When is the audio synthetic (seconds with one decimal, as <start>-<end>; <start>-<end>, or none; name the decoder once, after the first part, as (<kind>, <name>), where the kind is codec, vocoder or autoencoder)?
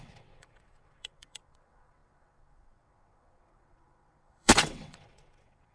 0.0-5.7 (vocoder, WaveNeXt)